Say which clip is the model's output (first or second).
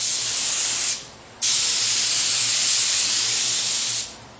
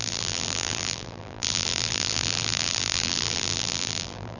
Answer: second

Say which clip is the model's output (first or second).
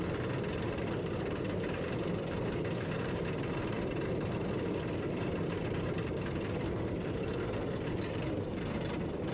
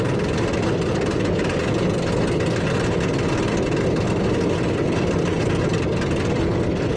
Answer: first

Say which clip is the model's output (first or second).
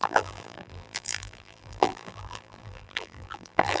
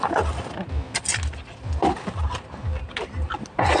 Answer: first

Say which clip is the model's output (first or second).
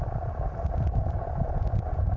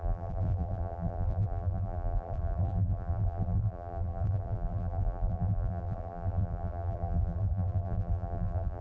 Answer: second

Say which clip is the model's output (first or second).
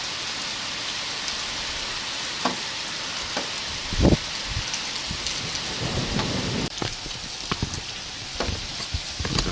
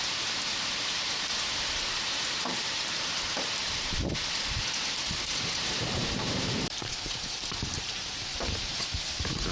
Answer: second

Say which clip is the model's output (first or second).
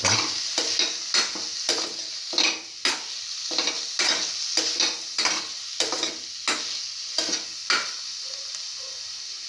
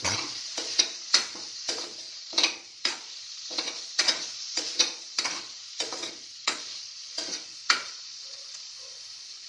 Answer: second